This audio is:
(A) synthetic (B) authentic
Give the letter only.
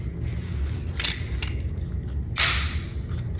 B